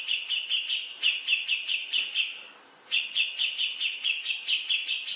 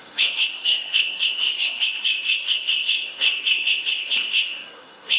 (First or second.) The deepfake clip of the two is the second